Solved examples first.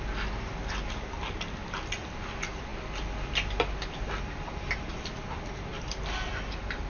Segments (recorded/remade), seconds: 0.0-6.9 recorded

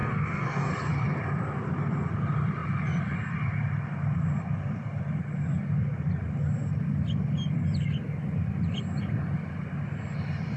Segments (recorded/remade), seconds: 0.0-0.7 remade; 0.7-10.6 recorded

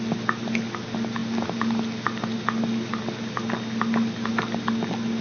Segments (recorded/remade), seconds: 0.0-5.2 recorded

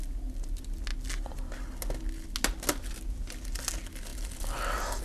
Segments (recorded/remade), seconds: 0.0-5.0 recorded

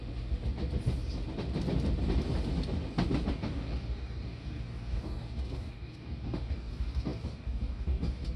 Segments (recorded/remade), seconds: 0.0-3.3 recorded; 3.3-8.4 remade

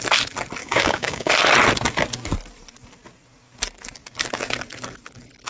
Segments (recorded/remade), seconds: 0.0-0.6 recorded; 0.6-1.3 remade; 1.3-5.5 recorded

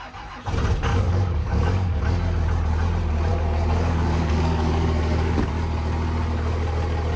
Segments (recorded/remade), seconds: 0.0-0.9 recorded; 0.9-2.0 remade; 2.0-3.3 recorded; 3.3-5.5 remade; 5.5-7.2 recorded